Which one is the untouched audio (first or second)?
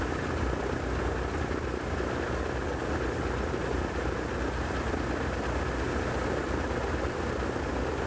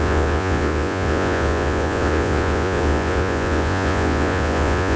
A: first